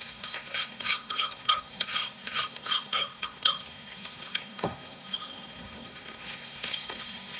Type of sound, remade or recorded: remade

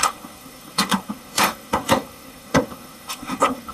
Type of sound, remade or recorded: remade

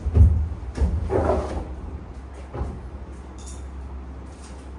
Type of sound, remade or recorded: recorded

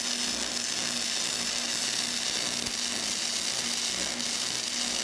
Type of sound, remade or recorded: recorded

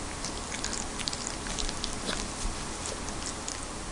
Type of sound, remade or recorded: recorded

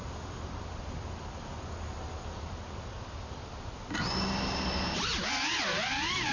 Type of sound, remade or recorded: recorded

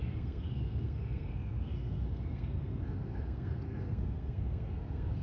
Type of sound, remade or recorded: remade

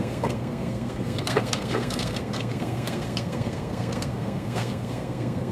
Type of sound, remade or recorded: remade